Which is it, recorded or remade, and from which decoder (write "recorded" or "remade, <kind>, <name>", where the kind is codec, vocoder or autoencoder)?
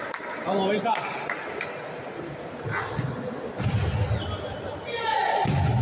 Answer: recorded